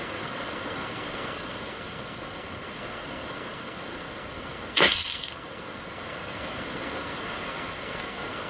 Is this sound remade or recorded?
remade